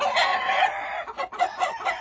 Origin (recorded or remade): recorded